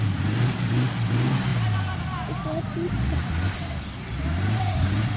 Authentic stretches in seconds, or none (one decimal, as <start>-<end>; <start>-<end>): 0.0-5.2